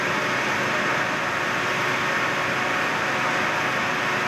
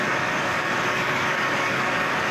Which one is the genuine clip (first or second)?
first